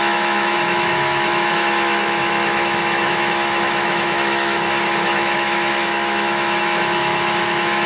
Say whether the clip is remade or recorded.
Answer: remade